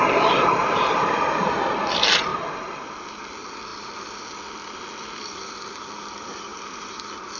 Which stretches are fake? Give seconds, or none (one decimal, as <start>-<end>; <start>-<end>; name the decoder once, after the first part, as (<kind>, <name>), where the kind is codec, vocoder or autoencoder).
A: 2.3-2.9 (vocoder, BigVGAN v2); 6.5-7.0